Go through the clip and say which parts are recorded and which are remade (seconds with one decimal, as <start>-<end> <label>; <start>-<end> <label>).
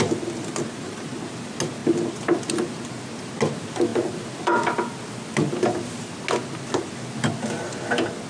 0.0-8.3 recorded